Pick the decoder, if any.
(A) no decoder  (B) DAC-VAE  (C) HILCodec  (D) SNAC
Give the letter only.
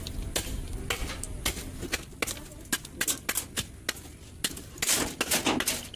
A